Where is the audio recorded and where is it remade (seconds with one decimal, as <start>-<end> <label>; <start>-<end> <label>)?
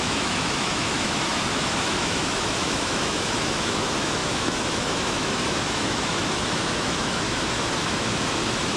0.0-8.8 remade